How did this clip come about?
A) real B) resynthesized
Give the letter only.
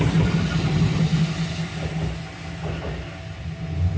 A